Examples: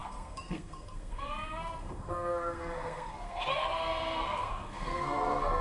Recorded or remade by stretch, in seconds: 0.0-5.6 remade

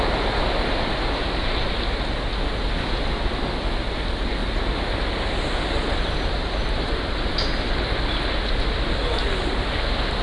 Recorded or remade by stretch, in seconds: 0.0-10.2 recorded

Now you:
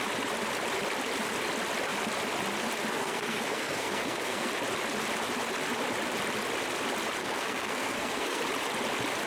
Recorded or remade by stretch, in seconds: 0.0-2.9 recorded; 2.9-4.5 remade; 4.5-7.2 recorded; 7.2-8.4 remade; 8.4-9.3 recorded